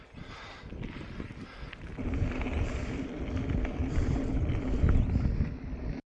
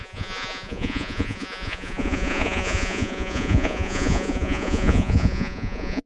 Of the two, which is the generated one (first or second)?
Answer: second